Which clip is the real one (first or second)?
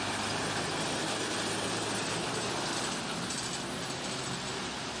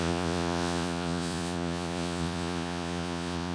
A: first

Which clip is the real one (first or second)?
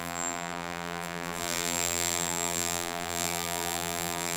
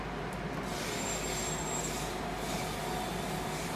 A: second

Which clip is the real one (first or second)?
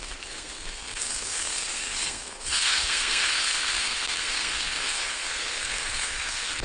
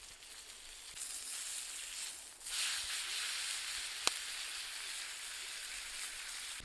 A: second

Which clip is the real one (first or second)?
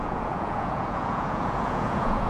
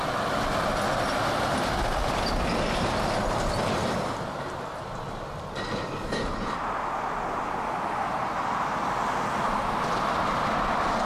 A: second